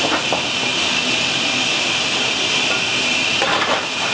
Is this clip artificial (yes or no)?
no